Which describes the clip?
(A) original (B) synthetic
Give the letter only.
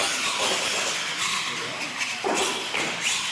A